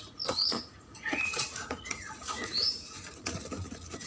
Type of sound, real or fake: fake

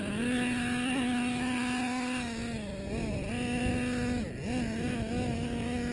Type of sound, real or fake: real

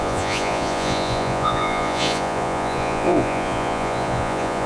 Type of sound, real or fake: fake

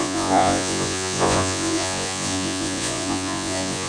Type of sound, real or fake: fake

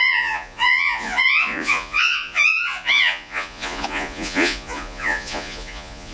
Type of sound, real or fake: fake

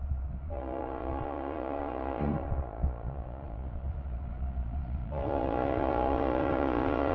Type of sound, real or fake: fake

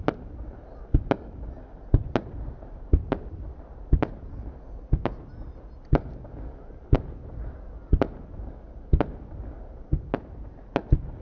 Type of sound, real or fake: real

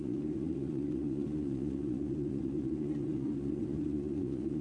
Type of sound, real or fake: fake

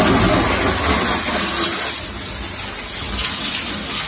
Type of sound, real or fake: real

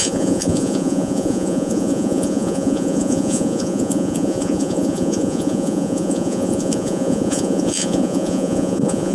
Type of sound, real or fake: fake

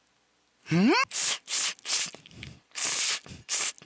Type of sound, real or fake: real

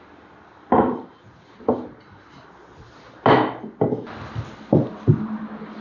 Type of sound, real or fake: real